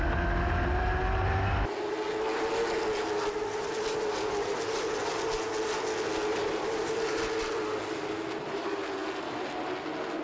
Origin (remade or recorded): recorded